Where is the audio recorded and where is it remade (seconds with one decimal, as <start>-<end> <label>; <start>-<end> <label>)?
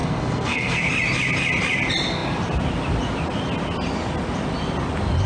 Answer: 0.0-0.8 remade; 0.8-5.3 recorded